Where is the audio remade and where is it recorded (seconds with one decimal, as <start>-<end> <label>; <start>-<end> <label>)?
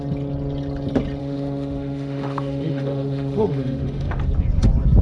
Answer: 0.0-1.2 recorded; 1.2-4.2 remade; 4.2-5.0 recorded